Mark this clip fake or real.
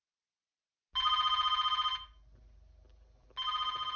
real